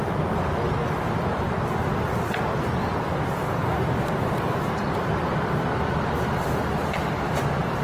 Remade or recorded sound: recorded